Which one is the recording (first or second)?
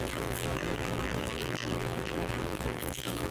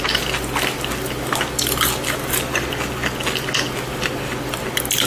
second